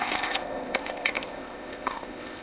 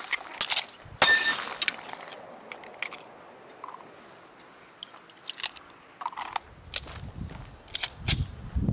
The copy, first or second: first